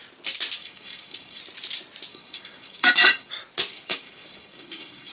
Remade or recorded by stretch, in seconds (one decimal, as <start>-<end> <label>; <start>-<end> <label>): 0.0-0.6 recorded; 0.6-1.4 remade; 1.4-2.1 recorded; 2.1-3.3 remade; 3.3-3.7 recorded; 3.7-5.1 remade